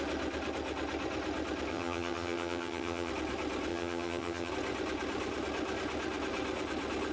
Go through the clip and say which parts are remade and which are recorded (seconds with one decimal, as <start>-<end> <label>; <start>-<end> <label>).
0.0-1.7 recorded; 1.7-3.1 remade; 3.1-3.7 recorded; 3.7-4.5 remade; 4.5-7.1 recorded